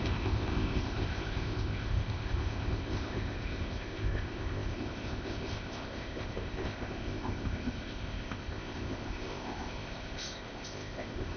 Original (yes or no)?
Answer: no